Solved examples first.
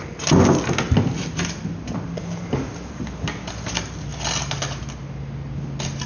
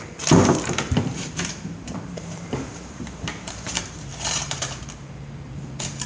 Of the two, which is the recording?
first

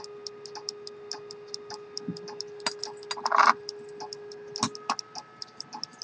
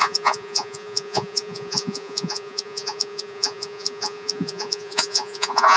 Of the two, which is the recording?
first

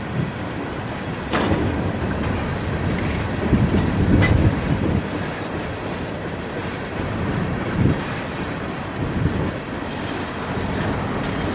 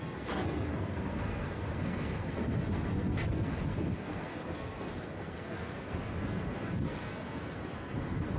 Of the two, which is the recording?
first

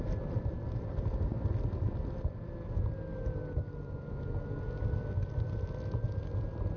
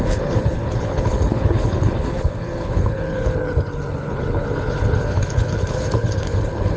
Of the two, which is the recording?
first